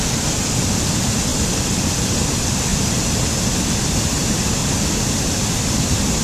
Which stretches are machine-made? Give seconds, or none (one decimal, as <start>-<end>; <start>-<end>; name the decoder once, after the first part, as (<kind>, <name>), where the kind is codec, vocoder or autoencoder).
0.0-1.3 (vocoder, BigVGAN v2); 1.8-2.7; 4.0-4.6; 5.1-6.2